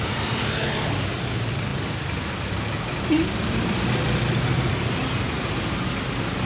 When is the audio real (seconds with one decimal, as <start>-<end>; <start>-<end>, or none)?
0.0-6.4